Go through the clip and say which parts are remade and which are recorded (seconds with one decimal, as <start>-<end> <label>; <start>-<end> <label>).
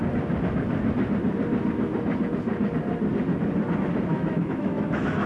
0.0-4.1 recorded; 4.1-5.3 remade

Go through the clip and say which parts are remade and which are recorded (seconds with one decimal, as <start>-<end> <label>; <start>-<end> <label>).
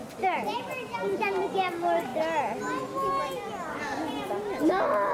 0.0-2.1 remade; 2.1-5.1 recorded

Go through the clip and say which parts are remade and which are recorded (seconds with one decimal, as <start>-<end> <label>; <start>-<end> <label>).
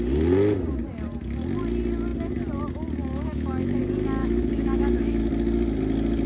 0.0-3.0 recorded; 3.0-3.8 remade; 3.8-4.2 recorded; 4.2-5.2 remade; 5.2-6.3 recorded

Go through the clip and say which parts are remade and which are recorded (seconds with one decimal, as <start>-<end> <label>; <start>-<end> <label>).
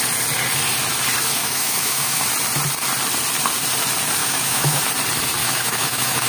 0.0-1.4 recorded; 1.4-2.2 remade; 2.2-4.2 recorded; 4.2-4.8 remade; 4.8-5.4 recorded; 5.4-6.3 remade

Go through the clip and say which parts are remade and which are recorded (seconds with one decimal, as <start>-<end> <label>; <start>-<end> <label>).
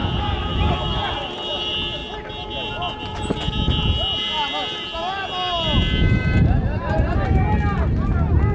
0.0-8.5 recorded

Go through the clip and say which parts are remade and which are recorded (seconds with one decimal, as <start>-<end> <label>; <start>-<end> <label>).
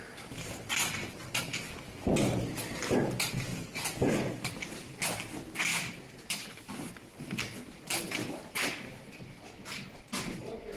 0.0-3.5 recorded; 3.5-5.0 remade; 5.0-5.7 recorded; 5.7-6.7 remade; 6.7-8.2 recorded; 8.2-9.2 remade; 9.2-10.8 recorded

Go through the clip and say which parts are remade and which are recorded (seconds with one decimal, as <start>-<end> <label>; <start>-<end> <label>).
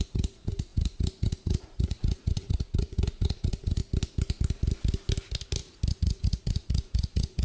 0.0-3.8 remade; 3.8-5.9 recorded; 5.9-7.4 remade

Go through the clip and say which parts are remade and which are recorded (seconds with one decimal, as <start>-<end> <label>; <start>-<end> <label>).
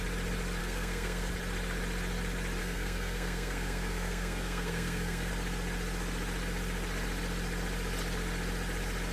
0.0-0.6 recorded; 0.6-1.3 remade; 1.3-2.6 recorded; 2.6-5.3 remade; 5.3-9.1 recorded